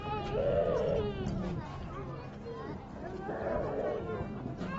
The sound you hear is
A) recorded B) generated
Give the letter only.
A